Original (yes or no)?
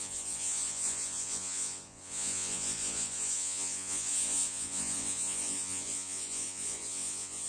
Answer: no